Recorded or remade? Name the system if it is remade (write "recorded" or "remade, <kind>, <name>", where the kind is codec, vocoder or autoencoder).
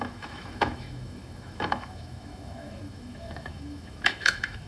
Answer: remade, autoencoder, DAC-VAE